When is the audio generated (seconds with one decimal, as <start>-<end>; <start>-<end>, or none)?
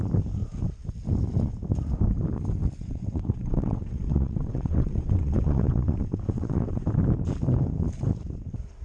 2.8-6.9